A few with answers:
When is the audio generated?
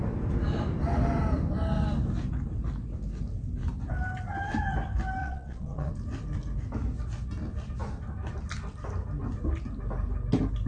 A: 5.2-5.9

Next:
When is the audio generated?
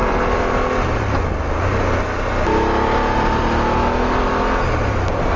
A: none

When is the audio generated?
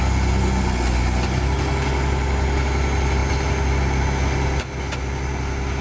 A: none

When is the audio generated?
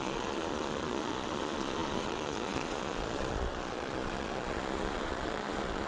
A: 0.0-5.9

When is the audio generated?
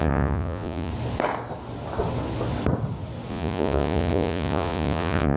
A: 0.0-0.9; 3.3-5.4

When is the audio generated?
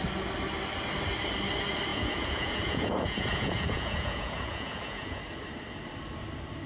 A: 1.9-5.2